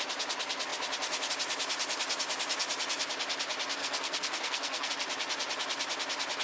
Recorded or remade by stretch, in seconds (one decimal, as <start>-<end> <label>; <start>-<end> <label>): 0.0-3.8 recorded; 3.8-4.9 remade; 4.9-6.4 recorded